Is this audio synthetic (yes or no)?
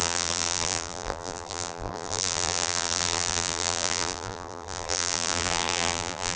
yes